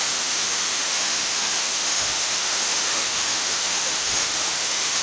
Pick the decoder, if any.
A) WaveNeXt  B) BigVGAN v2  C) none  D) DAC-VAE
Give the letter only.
D